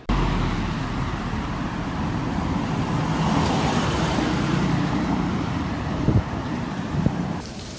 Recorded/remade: remade